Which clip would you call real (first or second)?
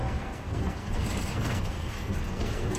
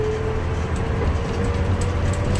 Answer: second